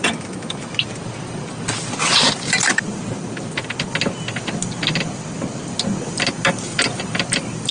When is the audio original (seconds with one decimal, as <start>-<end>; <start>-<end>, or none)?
0.0-7.7